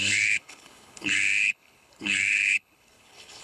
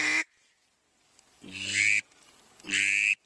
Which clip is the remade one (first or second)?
first